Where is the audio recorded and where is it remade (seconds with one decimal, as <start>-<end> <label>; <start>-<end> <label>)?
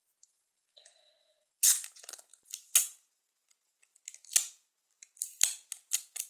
0.0-6.3 recorded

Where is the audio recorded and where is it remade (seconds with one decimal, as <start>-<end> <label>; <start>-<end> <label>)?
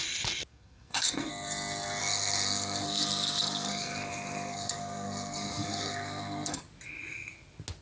0.0-0.5 recorded; 0.5-1.3 remade; 1.3-2.0 recorded; 2.0-6.6 remade; 6.6-7.8 recorded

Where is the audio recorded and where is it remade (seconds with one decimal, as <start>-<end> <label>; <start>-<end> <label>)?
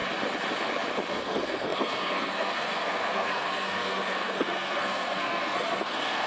0.0-1.1 recorded; 1.1-6.3 remade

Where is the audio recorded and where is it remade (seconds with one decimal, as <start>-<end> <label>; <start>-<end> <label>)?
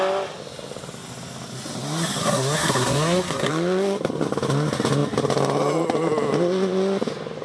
0.0-2.2 recorded; 2.2-3.5 remade; 3.5-7.4 recorded